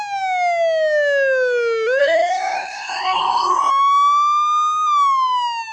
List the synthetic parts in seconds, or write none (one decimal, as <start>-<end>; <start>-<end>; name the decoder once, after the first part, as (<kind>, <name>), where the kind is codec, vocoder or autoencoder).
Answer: 2.0-3.7 (codec, SNAC)